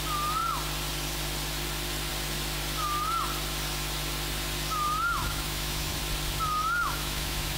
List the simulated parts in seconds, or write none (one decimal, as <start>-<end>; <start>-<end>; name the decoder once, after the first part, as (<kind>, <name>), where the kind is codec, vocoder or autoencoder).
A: 5.2-6.0 (autoencoder, DAC-VAE); 6.8-7.6